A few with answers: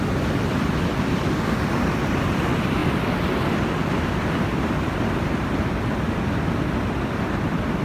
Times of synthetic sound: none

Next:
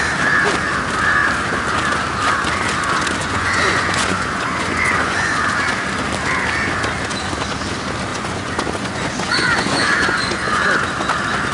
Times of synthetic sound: 3.2-5.3 (vocoder, Vocos); 8.1-10.6

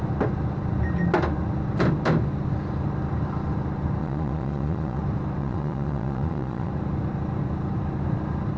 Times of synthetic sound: 4.0-5.0 (vocoder, Vocos); 5.4-6.7

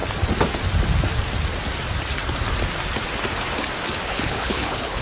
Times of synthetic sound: 4.1-5.0 (codec, HILCodec)